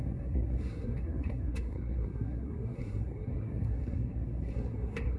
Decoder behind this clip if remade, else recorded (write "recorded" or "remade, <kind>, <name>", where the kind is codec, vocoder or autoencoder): remade, codec, SNAC